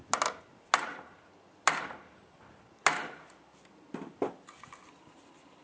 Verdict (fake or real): real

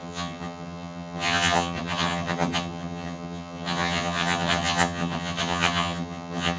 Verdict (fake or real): fake